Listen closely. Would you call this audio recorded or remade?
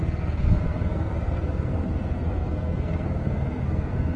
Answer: remade